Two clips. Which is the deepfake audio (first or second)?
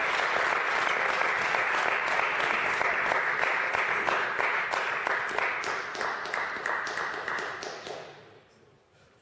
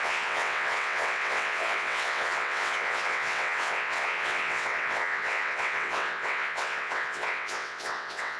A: second